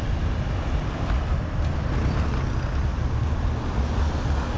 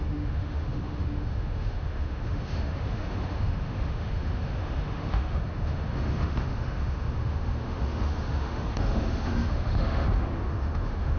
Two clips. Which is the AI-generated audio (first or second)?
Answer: second